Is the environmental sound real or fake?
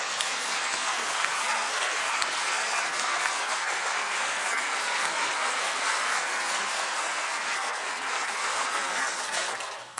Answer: fake